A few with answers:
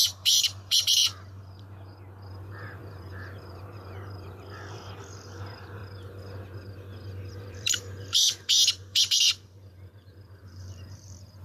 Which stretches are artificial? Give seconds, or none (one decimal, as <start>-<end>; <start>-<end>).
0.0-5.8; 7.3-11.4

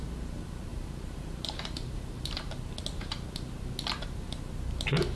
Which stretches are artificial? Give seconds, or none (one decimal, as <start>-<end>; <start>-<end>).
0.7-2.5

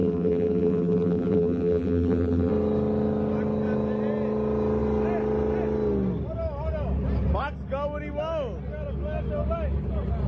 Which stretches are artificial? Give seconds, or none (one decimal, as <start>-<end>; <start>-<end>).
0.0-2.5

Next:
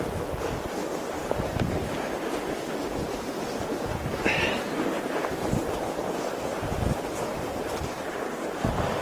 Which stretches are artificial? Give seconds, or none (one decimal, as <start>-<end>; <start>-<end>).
6.0-8.0

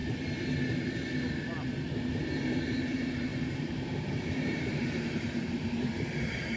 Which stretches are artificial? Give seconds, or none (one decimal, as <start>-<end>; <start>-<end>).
3.3-6.1

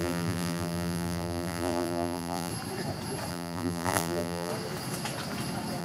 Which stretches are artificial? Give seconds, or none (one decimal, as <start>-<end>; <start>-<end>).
0.0-2.5; 3.3-4.5